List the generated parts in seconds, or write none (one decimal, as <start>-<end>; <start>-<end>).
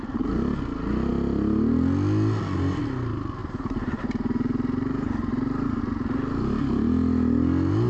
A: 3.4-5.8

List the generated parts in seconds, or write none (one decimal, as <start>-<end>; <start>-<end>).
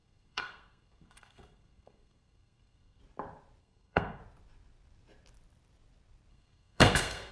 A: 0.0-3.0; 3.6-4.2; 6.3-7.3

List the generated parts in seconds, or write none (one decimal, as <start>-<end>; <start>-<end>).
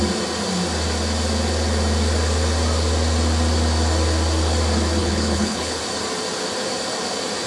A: 5.0-5.8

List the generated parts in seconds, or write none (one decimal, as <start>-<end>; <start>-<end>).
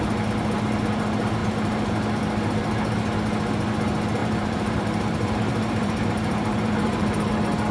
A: 1.4-1.9; 4.2-7.3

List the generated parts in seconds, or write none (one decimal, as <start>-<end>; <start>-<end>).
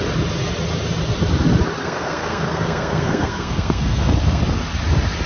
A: 1.8-4.4